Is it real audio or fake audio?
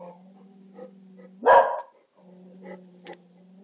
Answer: real